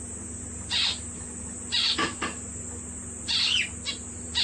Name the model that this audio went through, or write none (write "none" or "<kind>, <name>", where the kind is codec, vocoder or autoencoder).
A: none